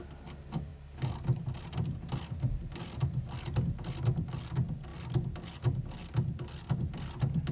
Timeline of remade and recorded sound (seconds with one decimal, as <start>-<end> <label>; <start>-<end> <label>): 0.0-7.5 recorded